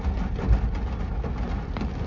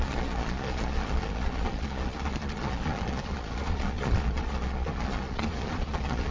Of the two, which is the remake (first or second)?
second